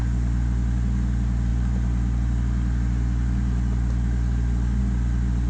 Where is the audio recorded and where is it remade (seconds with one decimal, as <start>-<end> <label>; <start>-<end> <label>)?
0.0-5.5 recorded